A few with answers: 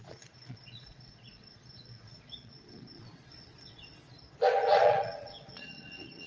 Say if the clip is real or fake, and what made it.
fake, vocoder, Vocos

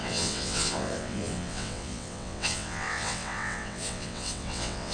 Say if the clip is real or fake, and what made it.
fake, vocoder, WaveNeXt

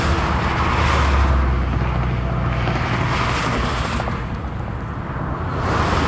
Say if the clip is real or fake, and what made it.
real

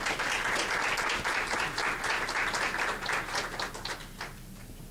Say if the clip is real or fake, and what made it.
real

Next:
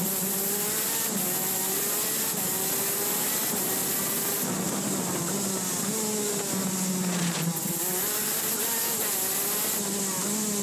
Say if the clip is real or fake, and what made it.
real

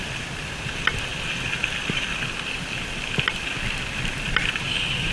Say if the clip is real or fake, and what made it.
real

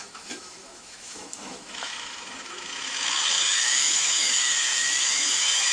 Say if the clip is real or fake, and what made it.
fake, autoencoder, DAC-VAE